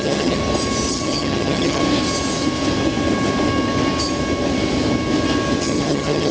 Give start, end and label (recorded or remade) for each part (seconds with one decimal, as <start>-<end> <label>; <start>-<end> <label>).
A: 0.0-0.4 remade; 0.4-0.9 recorded; 0.9-1.8 remade; 1.8-5.6 recorded; 5.6-6.3 remade